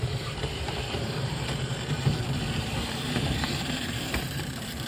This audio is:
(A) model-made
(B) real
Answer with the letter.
A